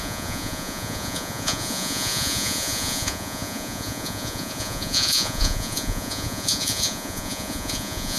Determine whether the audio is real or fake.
fake